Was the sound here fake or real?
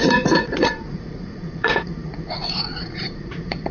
fake